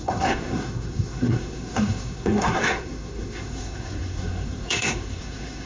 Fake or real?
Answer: fake